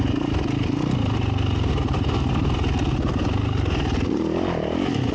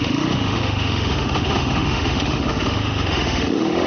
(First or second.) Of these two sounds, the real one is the first